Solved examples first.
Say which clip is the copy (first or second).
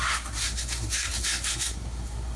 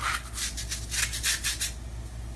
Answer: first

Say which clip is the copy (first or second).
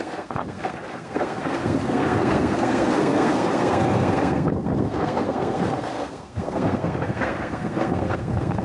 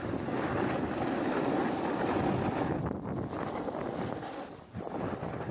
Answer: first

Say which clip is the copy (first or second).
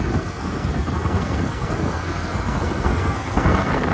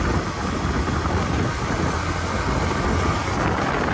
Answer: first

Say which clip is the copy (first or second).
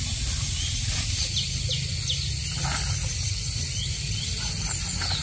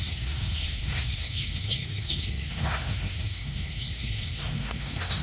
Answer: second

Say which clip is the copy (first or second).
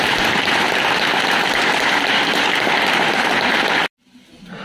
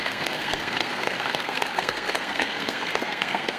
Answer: second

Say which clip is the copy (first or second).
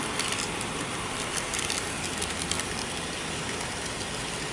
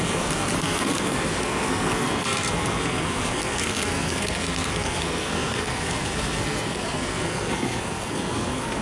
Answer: second